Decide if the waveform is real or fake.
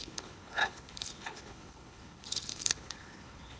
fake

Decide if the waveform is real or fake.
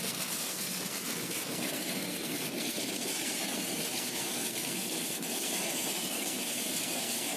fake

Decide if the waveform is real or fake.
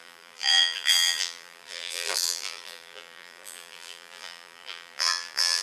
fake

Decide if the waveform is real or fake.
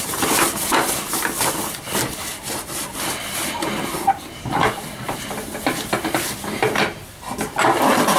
real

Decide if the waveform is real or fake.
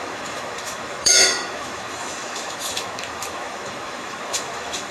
fake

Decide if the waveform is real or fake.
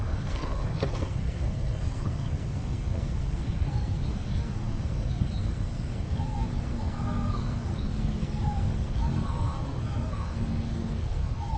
fake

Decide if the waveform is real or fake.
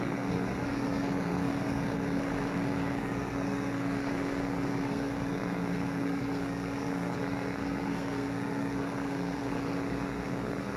fake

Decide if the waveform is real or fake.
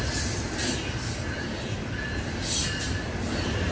real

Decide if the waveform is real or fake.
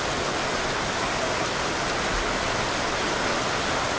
real